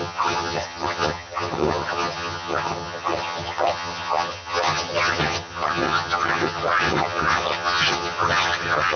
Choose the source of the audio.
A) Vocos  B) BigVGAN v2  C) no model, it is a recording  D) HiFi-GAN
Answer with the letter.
D